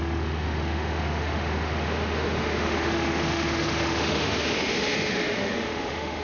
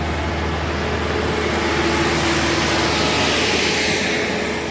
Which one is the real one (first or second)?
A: second